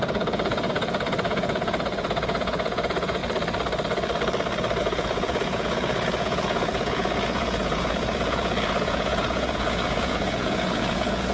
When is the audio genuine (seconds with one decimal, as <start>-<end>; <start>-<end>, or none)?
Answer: 3.2-4.8

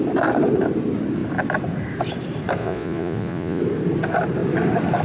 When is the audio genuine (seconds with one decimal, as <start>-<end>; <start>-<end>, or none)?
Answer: 0.0-2.6; 3.6-5.0

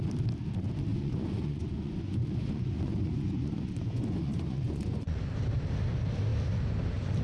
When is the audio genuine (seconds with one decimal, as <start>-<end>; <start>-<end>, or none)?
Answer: 0.0-0.9; 5.2-7.2

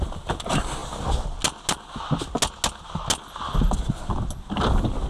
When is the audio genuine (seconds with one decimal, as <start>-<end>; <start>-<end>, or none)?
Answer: 0.0-5.1

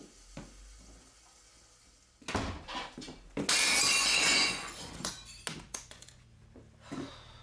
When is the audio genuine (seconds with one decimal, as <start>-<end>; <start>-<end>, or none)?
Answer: 0.0-4.0; 5.1-5.5; 6.4-7.4

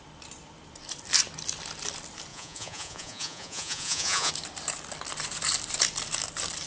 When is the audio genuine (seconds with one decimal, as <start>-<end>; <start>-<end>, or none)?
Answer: 0.0-2.3; 4.3-6.7